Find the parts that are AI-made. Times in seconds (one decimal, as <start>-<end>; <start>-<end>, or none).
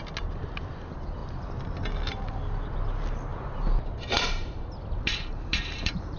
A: 3.3-6.2